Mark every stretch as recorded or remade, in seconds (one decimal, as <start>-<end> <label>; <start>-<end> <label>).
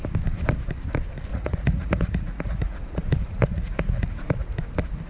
0.0-1.3 recorded; 1.3-4.4 remade; 4.4-5.1 recorded